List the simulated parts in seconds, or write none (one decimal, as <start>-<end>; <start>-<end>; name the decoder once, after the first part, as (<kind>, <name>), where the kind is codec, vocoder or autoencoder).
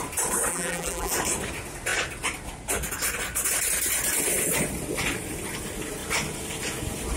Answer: 0.5-1.1 (vocoder, BigVGAN v2)